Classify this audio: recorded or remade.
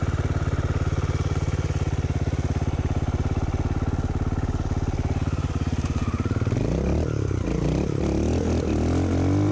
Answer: recorded